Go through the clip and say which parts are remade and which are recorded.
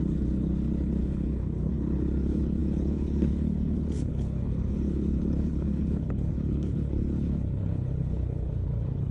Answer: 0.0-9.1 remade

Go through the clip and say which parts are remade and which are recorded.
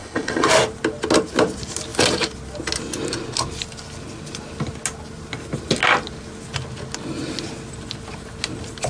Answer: 0.0-0.5 remade; 0.5-8.9 recorded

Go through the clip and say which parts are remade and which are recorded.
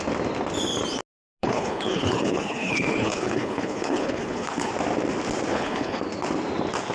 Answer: 0.0-1.4 recorded; 1.4-4.7 remade; 4.7-5.5 recorded; 5.5-6.0 remade; 6.0-6.9 recorded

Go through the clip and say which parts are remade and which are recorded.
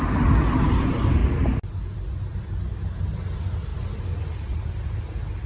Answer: 0.0-5.5 recorded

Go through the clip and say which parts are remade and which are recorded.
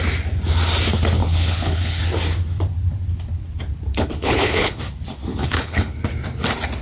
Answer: 0.0-1.2 recorded; 1.2-2.0 remade; 2.0-3.9 recorded; 3.9-4.8 remade; 4.8-5.3 recorded; 5.3-6.0 remade; 6.0-6.8 recorded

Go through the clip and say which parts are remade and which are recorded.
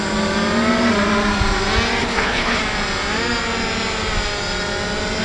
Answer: 0.0-2.0 recorded; 2.0-2.6 remade; 2.6-5.2 recorded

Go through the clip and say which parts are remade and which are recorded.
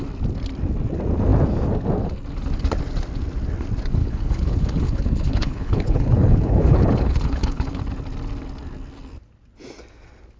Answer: 0.0-4.0 recorded; 4.0-7.8 remade; 7.8-10.4 recorded